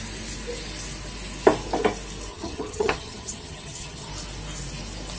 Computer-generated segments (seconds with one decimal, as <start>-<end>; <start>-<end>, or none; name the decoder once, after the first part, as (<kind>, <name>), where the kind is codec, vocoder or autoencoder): 2.3-4.1 (vocoder, HiFi-GAN)